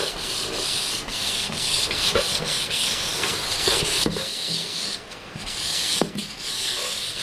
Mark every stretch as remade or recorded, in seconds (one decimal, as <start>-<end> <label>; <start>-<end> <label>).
0.0-7.2 remade